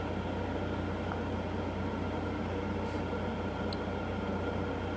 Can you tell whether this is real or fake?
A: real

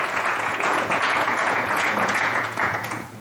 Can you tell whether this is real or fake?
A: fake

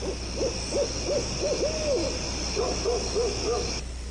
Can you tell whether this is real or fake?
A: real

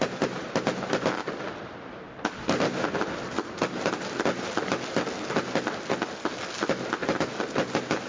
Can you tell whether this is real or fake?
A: real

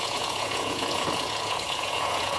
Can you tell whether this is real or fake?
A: fake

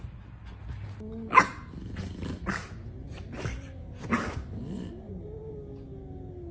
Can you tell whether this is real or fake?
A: real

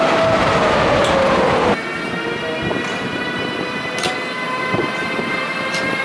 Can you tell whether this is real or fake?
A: real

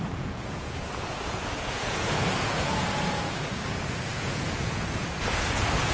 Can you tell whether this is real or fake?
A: fake